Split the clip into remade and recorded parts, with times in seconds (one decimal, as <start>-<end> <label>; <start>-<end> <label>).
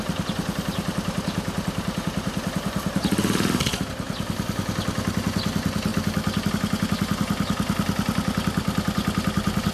0.0-9.7 recorded